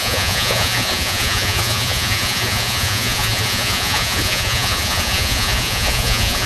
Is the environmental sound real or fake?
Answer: fake